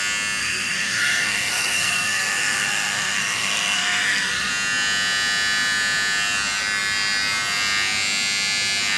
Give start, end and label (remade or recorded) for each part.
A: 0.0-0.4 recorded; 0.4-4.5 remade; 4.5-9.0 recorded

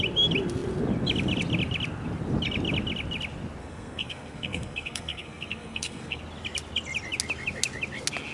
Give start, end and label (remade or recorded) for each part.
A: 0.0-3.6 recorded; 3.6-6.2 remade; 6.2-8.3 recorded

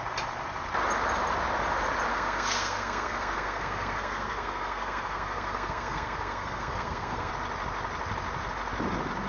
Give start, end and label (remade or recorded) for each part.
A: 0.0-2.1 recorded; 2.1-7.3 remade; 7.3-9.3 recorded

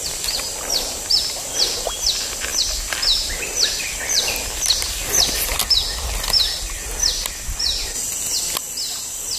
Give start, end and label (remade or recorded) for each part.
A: 0.0-9.4 recorded

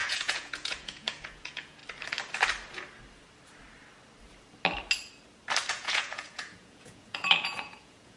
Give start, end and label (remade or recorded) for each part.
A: 0.0-1.8 remade; 1.8-5.7 recorded; 5.7-8.2 remade